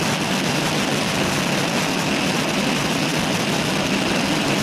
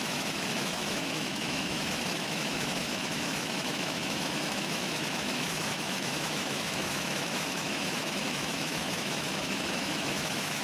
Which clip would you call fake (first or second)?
second